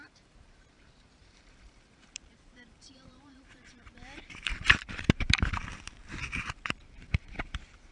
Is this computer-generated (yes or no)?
yes